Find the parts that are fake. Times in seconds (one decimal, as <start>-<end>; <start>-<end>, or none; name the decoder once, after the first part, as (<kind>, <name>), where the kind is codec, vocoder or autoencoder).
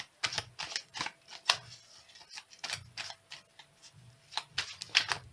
none